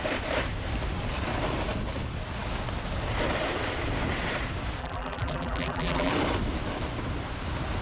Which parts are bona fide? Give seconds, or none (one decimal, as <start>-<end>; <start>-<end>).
0.0-4.8; 6.1-7.8

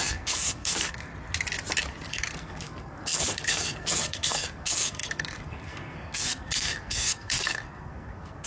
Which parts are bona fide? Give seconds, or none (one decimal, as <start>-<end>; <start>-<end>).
1.1-2.1

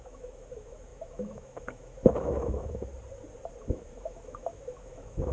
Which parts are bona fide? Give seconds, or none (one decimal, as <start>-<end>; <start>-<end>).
2.9-3.6

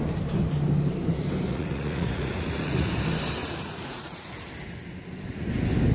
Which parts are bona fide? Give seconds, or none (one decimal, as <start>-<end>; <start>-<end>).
0.0-1.5; 2.9-3.4; 4.5-5.9